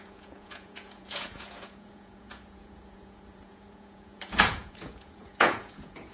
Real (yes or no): no